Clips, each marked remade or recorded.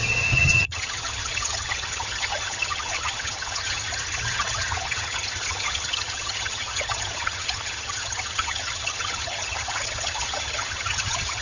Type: remade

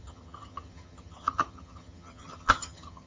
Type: remade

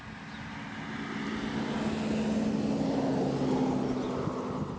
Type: recorded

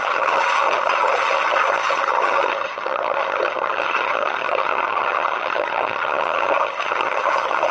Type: remade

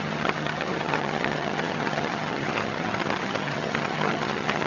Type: remade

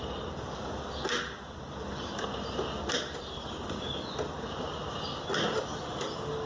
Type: recorded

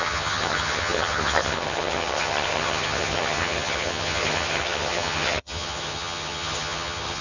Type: remade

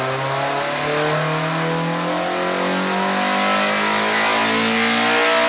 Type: recorded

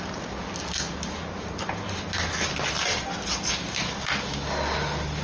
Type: recorded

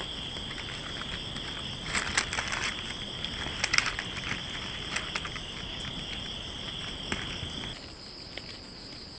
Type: recorded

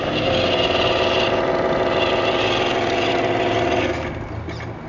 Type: recorded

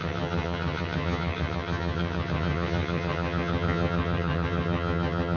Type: remade